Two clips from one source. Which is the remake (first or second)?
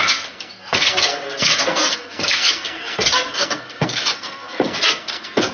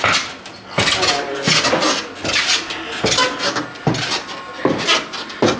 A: first